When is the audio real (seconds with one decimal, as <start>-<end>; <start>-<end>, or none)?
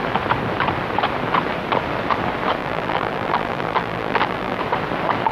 0.0-2.6; 4.6-5.3